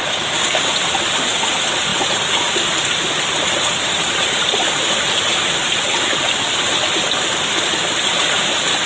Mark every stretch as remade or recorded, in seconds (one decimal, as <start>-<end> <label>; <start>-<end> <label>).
0.0-0.7 remade; 0.7-8.9 recorded